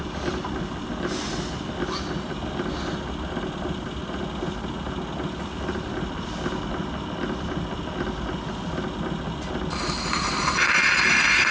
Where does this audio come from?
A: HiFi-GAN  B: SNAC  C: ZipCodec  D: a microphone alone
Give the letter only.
D